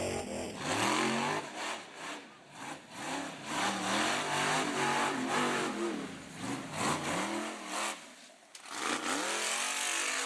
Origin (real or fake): real